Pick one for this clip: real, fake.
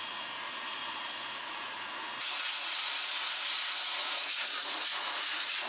fake